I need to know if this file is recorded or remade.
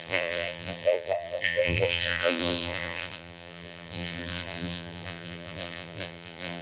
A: remade